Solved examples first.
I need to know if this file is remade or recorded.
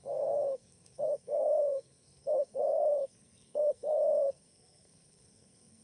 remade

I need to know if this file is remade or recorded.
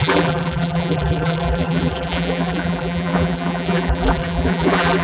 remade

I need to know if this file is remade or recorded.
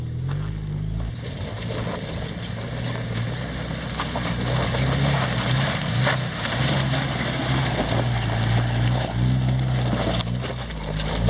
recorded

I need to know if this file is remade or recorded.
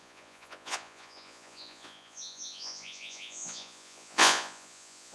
remade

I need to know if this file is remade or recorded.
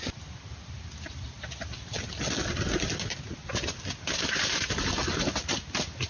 recorded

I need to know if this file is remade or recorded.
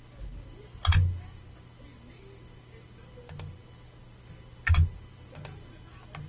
recorded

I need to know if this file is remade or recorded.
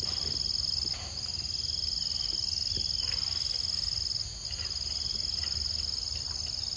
recorded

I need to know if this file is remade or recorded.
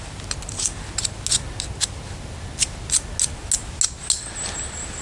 recorded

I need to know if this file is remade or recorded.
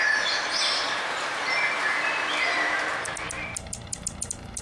remade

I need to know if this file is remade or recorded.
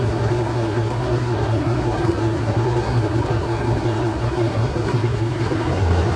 remade